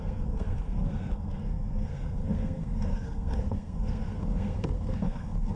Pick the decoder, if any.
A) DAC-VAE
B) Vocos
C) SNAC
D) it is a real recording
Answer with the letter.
C